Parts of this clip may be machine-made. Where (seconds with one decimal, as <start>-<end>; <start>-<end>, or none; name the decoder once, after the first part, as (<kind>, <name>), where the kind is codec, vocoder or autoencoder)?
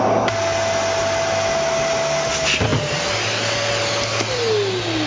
none